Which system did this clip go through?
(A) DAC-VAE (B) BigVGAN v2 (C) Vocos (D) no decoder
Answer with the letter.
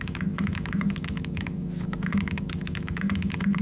A